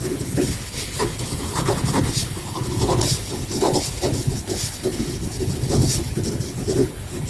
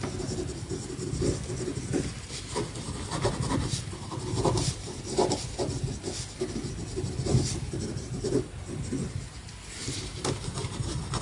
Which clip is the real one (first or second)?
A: second